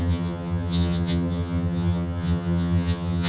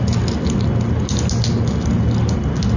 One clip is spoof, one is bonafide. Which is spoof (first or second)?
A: first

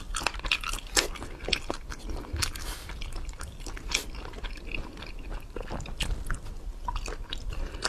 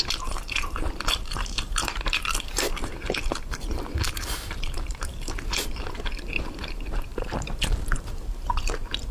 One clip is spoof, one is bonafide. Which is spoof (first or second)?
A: second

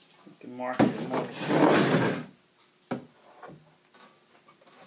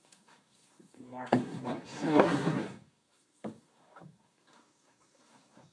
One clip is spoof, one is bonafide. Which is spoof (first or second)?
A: second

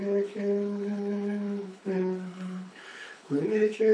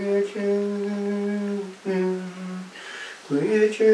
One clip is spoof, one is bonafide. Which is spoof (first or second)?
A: first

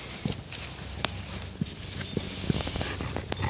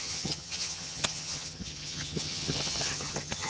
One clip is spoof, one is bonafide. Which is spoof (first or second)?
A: second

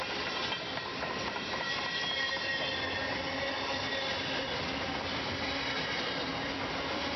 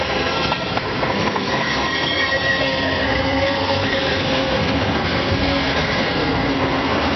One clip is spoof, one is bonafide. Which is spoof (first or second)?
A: second